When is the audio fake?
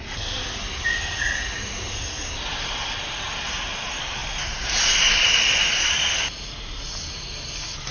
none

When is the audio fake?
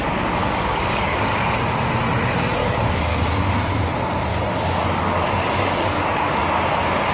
0.4-1.6 (codec, DAC); 2.6-3.7; 4.3-6.4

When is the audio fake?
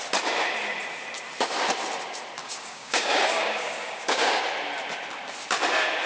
2.4-4.4 (codec, DAC)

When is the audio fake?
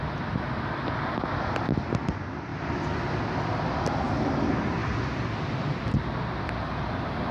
none